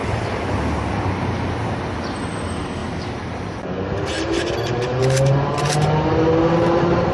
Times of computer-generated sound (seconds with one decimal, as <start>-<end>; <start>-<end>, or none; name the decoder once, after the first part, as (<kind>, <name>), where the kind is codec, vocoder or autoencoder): none